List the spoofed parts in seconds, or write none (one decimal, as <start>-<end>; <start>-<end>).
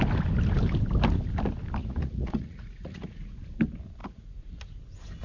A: 1.8-3.4; 4.0-4.8